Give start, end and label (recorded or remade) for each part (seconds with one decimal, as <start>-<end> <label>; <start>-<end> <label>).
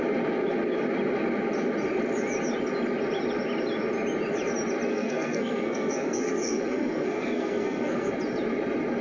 0.0-4.9 recorded; 4.9-8.1 remade; 8.1-9.0 recorded